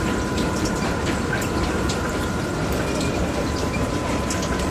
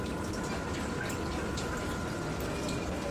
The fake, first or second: first